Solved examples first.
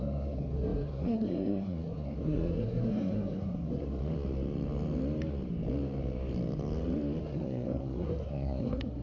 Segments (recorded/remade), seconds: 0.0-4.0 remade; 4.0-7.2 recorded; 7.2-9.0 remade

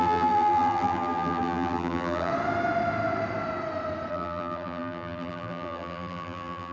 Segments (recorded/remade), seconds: 0.0-2.3 remade; 2.3-4.1 recorded; 4.1-6.7 remade